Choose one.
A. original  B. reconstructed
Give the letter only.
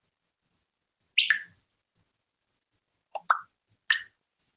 A